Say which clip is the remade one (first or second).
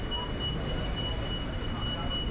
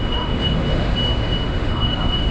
second